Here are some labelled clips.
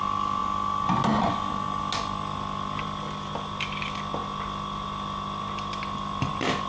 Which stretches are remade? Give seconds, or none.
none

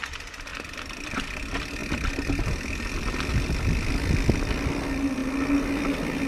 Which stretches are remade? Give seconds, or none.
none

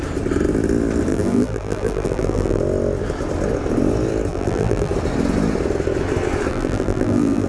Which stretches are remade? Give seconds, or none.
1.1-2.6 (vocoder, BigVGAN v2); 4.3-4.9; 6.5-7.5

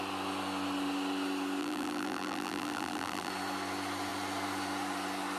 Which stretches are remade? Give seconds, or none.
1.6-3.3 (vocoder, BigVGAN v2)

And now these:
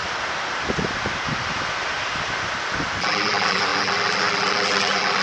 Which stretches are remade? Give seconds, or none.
3.0-5.2 (vocoder, BigVGAN v2)